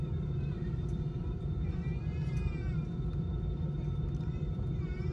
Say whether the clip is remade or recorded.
remade